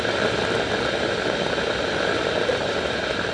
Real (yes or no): yes